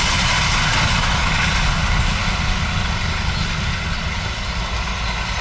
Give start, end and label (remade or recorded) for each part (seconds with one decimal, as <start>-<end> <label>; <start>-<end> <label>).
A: 0.0-5.4 recorded